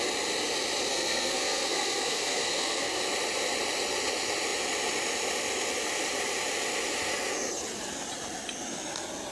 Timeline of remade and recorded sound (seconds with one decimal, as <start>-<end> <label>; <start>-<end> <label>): 0.0-0.9 recorded; 0.9-3.0 remade; 3.0-9.3 recorded